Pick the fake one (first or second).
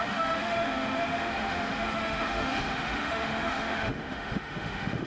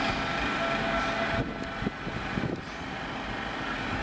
first